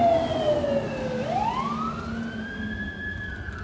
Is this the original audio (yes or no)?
yes